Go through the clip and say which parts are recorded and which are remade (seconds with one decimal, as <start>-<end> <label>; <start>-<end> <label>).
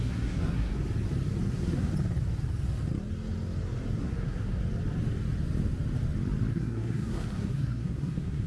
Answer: 0.0-0.7 remade; 0.7-1.5 recorded; 1.5-1.9 remade; 1.9-4.0 recorded; 4.0-4.6 remade; 4.6-6.5 recorded; 6.5-8.5 remade